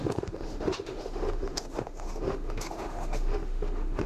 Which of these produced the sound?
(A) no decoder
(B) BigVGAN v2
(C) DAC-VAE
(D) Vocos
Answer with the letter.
C